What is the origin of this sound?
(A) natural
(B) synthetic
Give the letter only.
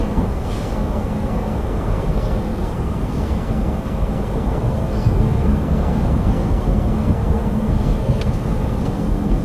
B